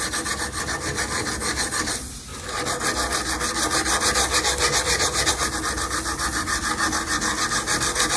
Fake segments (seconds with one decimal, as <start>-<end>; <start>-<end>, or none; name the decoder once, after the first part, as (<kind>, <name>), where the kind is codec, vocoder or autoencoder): none